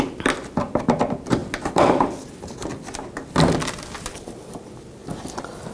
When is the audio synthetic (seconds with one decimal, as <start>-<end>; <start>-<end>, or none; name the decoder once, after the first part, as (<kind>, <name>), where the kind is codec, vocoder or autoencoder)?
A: none